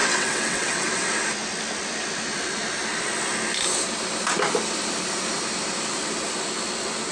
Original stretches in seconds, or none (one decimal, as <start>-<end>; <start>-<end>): 0.9-7.1